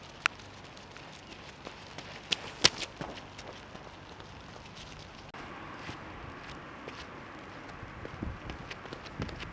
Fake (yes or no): no